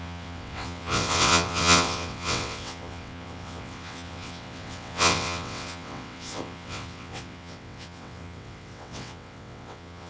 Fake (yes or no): yes